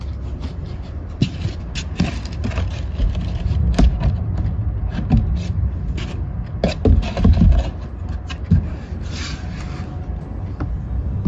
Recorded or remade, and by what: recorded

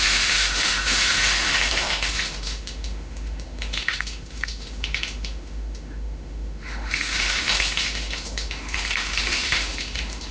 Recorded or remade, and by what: remade, autoencoder, DAC-VAE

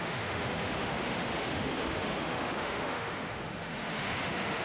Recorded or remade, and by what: remade, autoencoder, DAC-VAE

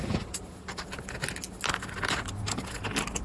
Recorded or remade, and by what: recorded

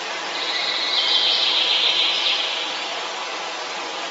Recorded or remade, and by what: recorded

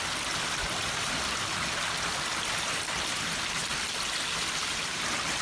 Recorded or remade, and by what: recorded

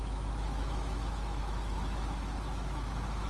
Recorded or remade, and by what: remade, autoencoder, DAC-VAE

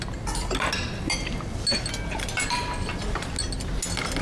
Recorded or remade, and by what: recorded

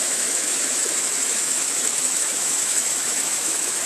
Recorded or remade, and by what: remade, autoencoder, DAC-VAE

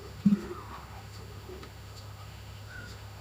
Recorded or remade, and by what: remade, autoencoder, DAC-VAE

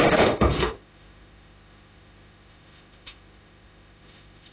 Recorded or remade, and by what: remade, autoencoder, DAC-VAE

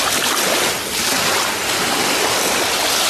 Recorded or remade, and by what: recorded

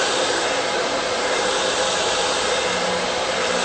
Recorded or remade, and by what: recorded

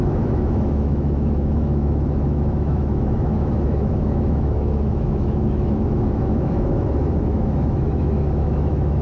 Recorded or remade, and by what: remade, autoencoder, DAC-VAE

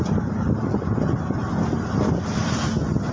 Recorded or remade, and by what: recorded